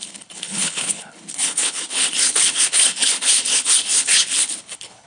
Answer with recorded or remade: remade